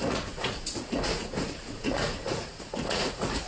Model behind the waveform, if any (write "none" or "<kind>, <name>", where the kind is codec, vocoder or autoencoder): vocoder, Vocos